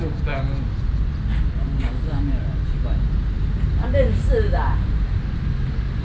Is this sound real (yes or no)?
yes